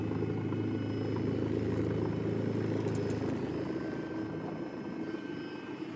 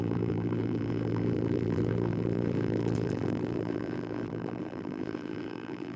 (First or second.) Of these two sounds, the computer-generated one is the second